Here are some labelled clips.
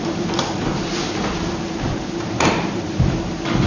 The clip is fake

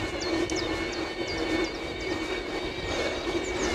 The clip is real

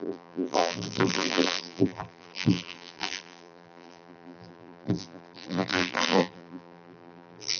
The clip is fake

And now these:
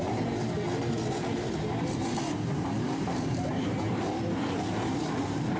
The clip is fake